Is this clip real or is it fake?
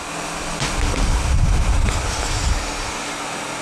real